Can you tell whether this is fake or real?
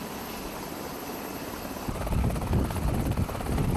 real